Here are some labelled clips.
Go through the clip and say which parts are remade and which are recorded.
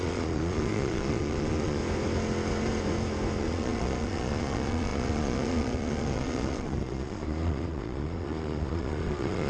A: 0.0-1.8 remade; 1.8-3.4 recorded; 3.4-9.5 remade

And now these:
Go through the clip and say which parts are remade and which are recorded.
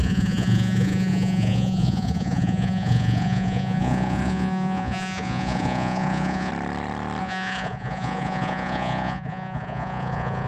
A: 0.0-6.5 remade; 6.5-7.2 recorded; 7.2-10.5 remade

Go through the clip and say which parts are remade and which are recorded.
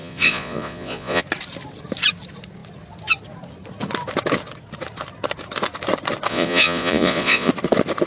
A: 0.0-1.2 remade; 1.2-6.3 recorded; 6.3-7.5 remade; 7.5-8.1 recorded